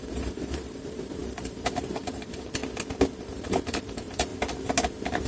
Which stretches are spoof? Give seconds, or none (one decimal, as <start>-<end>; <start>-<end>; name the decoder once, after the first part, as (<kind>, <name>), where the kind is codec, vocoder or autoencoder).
0.0-2.6 (vocoder, BigVGAN v2); 3.2-4.3